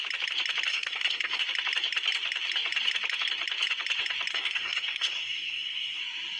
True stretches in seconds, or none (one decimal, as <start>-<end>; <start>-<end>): 0.0-0.7; 1.4-4.3; 6.0-6.4